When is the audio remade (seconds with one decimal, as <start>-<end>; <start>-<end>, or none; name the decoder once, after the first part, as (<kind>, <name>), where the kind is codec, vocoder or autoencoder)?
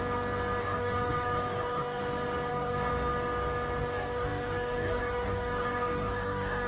0.6-2.0 (codec, DAC); 2.5-2.9; 3.8-6.7